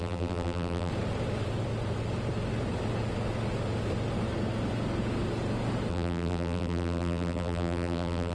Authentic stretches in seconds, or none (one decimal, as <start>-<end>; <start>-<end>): 0.9-5.9